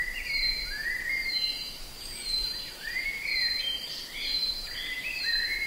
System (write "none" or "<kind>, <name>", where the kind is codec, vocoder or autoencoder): vocoder, BigVGAN v2